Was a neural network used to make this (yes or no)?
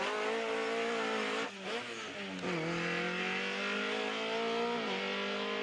no